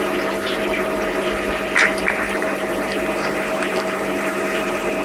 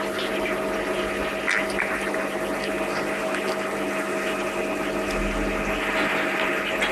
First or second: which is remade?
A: first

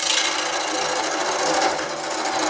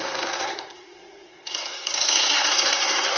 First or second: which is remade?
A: second